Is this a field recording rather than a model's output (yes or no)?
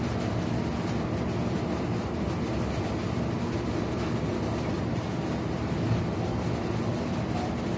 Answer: yes